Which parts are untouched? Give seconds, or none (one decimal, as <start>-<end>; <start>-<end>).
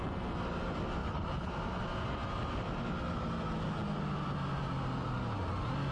0.0-1.0; 1.5-5.9